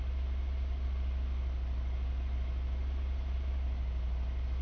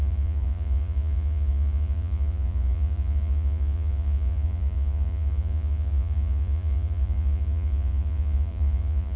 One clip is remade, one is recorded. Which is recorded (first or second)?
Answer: first